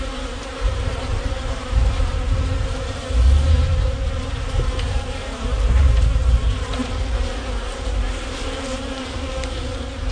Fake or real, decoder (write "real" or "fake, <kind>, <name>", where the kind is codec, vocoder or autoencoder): fake, vocoder, BigVGAN v2